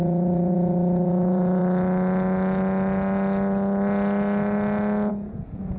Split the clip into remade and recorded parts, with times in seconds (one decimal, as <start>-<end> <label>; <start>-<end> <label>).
0.0-1.6 remade; 1.6-5.1 recorded; 5.1-5.8 remade

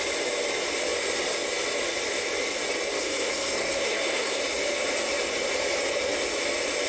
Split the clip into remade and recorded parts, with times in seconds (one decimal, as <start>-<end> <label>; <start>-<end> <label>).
0.0-3.0 recorded; 3.0-4.4 remade; 4.4-6.9 recorded

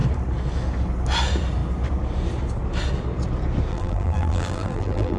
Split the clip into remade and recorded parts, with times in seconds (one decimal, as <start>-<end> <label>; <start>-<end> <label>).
0.0-3.7 recorded; 3.7-5.2 remade

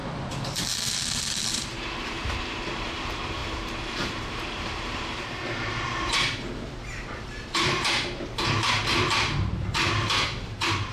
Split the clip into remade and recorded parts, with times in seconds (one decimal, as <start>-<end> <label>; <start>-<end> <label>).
0.0-1.5 recorded; 1.5-8.8 remade; 8.8-10.5 recorded; 10.5-10.9 remade

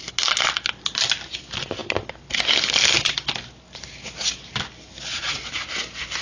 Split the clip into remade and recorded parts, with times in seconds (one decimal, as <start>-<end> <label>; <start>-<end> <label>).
0.0-6.2 recorded

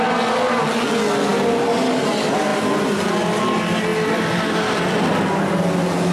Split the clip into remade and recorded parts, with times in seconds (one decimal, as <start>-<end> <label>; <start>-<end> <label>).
0.0-3.9 recorded; 3.9-5.4 remade; 5.4-6.1 recorded

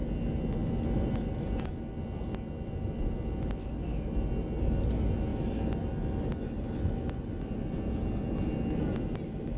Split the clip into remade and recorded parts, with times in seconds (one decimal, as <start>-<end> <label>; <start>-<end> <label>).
0.0-9.6 recorded